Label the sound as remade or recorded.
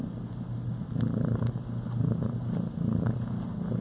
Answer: recorded